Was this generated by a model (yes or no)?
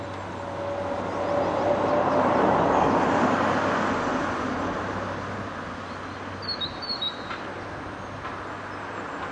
no